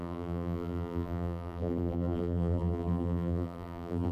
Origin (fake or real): fake